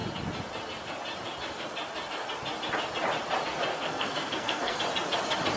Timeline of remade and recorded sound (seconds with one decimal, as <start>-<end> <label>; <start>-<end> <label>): 0.0-3.7 recorded; 3.7-4.8 remade; 4.8-5.6 recorded